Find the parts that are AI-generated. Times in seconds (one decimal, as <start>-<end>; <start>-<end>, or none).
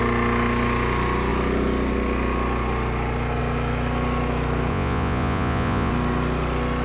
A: 4.7-5.9